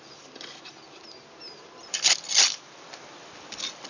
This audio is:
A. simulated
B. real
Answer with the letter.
B